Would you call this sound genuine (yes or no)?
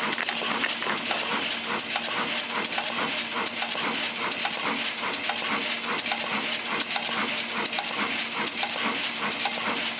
yes